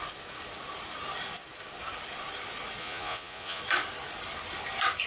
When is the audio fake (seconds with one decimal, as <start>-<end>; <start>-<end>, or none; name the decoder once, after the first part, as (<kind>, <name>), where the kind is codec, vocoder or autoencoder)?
2.8-3.6 (vocoder, Vocos)